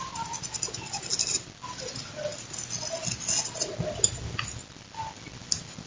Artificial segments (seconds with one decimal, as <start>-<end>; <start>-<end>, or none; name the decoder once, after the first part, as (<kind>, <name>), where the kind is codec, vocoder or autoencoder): none